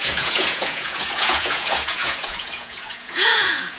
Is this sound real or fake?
fake